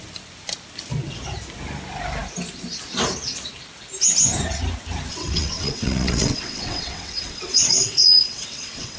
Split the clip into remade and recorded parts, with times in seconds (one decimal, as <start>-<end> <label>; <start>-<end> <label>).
0.0-5.1 recorded; 5.1-9.0 remade